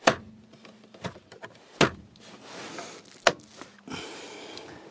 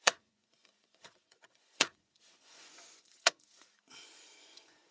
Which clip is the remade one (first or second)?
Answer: second